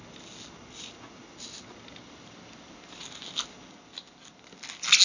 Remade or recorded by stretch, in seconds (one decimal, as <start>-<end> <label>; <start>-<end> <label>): 0.0-5.0 recorded